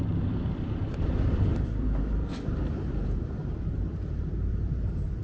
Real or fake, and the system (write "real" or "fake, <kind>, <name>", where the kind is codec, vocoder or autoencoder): fake, vocoder, BigVGAN v2